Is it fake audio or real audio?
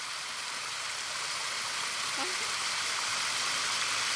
real